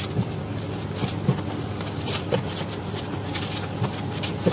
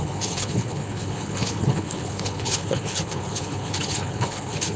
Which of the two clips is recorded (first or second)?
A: first